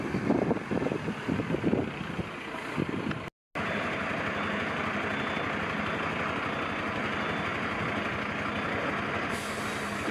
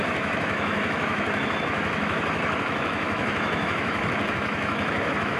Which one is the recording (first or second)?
first